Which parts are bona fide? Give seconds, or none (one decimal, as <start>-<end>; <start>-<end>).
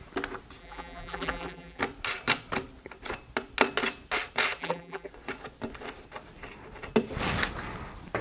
0.0-0.6; 1.8-4.6; 5.1-8.2